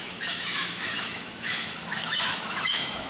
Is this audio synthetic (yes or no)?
yes